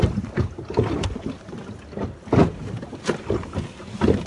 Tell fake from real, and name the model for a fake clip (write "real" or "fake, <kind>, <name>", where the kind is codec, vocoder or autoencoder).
real